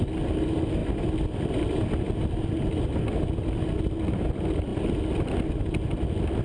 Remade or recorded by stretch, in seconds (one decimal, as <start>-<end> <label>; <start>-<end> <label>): 0.0-6.4 recorded